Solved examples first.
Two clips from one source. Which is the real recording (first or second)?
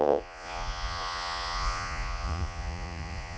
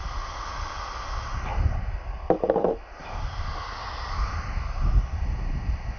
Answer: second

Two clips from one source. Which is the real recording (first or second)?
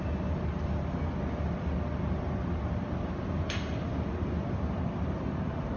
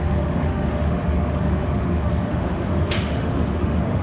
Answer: first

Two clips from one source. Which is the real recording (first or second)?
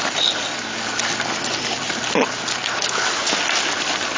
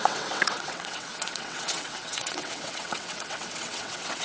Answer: first